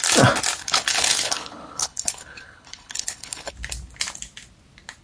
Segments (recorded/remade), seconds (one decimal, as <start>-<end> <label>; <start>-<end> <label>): 0.0-0.6 recorded; 0.6-3.5 remade; 3.5-5.0 recorded